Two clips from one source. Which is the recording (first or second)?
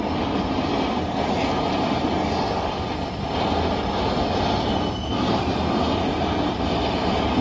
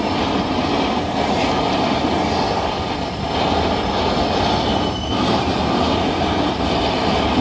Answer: first